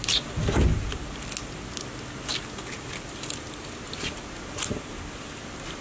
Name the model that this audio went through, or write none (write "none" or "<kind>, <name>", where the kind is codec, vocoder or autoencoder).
none